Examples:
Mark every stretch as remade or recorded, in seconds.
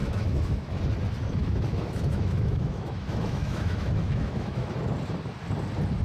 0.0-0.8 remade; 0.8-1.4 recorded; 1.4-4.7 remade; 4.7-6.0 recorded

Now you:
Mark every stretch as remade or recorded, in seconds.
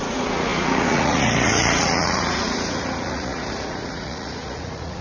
0.0-5.0 remade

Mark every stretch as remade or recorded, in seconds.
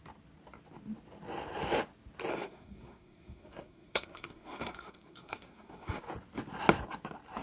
0.0-2.3 recorded; 2.3-6.0 remade; 6.0-7.4 recorded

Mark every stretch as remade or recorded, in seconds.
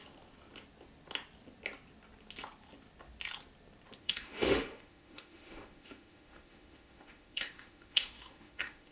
0.0-4.0 recorded; 4.0-8.9 remade